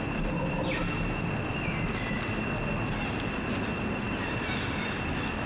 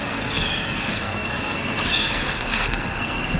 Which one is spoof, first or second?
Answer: second